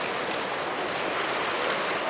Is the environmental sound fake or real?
real